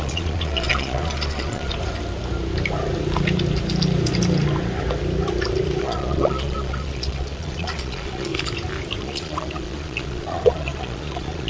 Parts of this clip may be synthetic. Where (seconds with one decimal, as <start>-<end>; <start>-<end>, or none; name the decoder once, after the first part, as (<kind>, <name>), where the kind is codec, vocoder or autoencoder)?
0.0-1.7 (vocoder, Vocos); 5.8-8.3; 9.0-11.5